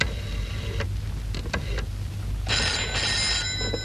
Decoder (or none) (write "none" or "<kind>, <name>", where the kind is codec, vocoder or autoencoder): none